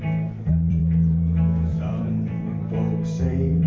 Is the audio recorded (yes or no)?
no